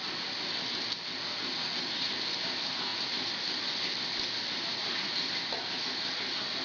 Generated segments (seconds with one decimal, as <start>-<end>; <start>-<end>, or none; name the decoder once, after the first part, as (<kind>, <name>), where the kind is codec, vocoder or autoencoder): none